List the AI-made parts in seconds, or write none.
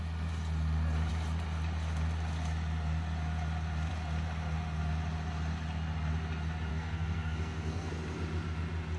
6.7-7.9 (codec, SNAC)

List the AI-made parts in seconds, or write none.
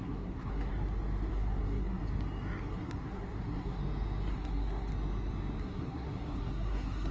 0.0-0.7 (codec, SNAC); 1.3-2.0; 2.7-3.8; 4.3-4.9; 5.6-7.1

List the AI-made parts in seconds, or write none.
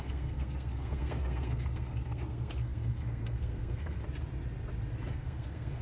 0.0-4.0 (codec, SNAC); 5.1-5.8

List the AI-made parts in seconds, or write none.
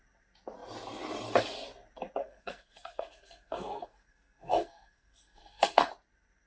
2.2-5.9 (codec, SNAC)